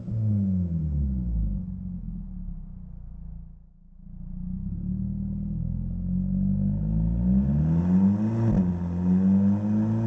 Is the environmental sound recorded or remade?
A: recorded